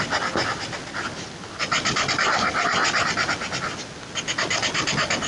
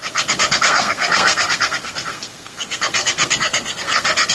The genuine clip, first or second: first